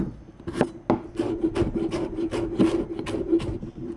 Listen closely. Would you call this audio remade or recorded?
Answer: recorded